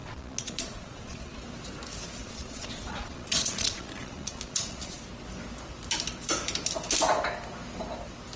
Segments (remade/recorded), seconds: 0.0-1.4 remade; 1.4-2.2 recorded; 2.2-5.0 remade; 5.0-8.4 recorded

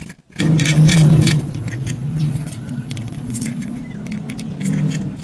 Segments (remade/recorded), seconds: 0.0-0.7 recorded; 0.7-3.8 remade; 3.8-5.2 recorded

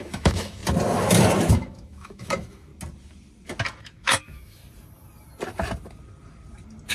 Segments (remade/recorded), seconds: 0.0-0.6 remade; 0.6-1.5 recorded; 1.5-2.7 remade; 2.7-3.8 recorded; 3.8-4.6 remade; 4.6-6.9 recorded

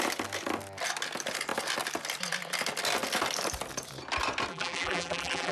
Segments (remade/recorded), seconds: 0.0-4.5 recorded; 4.5-5.5 remade

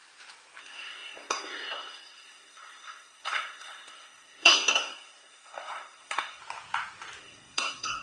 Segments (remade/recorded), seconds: 0.0-0.6 recorded; 0.6-6.4 remade; 6.4-7.2 recorded; 7.2-8.0 remade

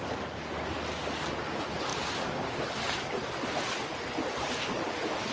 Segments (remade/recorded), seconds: 0.0-5.3 recorded

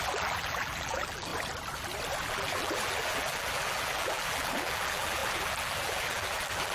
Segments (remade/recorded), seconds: 0.0-1.3 remade; 1.3-2.3 recorded; 2.3-6.7 remade